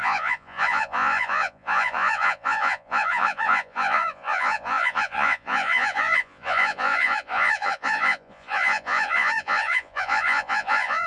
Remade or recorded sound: remade